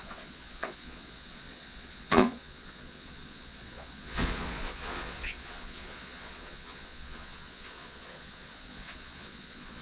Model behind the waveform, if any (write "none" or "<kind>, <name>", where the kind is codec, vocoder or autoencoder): vocoder, Vocos